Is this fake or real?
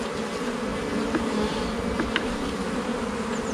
real